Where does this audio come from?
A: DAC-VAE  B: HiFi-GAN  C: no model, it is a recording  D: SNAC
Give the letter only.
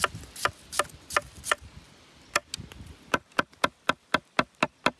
C